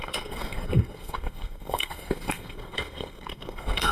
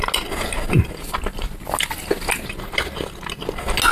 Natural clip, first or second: second